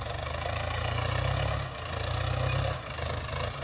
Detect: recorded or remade recorded